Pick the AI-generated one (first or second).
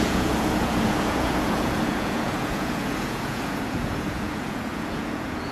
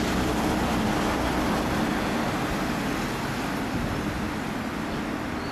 first